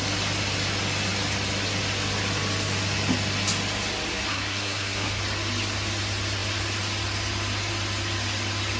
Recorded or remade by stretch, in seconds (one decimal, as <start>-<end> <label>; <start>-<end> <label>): 0.0-4.3 recorded; 4.3-5.2 remade; 5.2-8.8 recorded